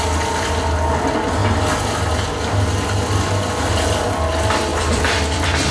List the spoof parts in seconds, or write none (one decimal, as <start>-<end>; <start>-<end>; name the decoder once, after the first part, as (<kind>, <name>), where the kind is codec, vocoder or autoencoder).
4.7-5.7 (vocoder, BigVGAN v2)